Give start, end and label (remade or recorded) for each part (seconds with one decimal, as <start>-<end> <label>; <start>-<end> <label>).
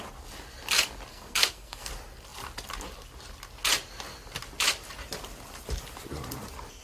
0.0-1.1 recorded; 1.1-1.9 remade; 1.9-6.8 recorded